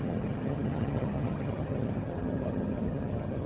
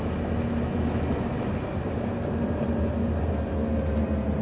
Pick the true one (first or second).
second